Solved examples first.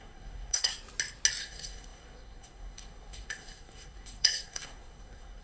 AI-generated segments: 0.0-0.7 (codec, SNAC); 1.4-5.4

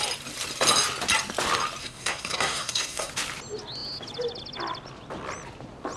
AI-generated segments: 1.8-3.1 (codec, SNAC)

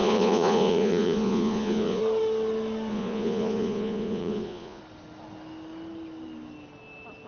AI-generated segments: 0.0-2.0 (vocoder, Vocos); 2.9-4.8

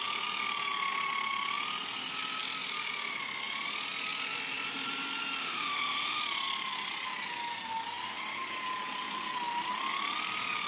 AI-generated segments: 5.4-6.2 (autoencoder, DAC-VAE)

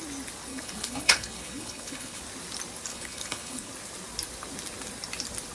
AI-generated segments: 0.5-2.2 (codec, HILCodec); 2.9-3.7

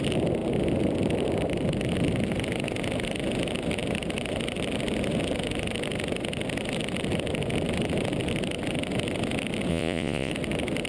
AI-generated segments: 9.7-10.3 (vocoder, Vocos)

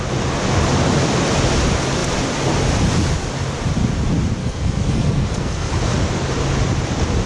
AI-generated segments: 4.4-5.7 (codec, SNAC)